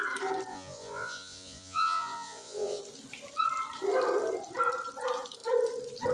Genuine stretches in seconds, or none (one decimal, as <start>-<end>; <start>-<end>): 0.0-0.5; 2.8-6.1